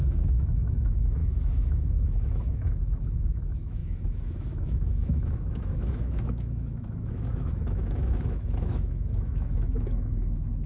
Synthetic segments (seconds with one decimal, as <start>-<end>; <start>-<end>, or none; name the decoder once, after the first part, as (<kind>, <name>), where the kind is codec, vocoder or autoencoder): 0.0-10.7 (autoencoder, DAC-VAE)